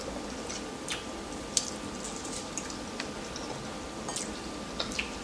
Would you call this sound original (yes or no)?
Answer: yes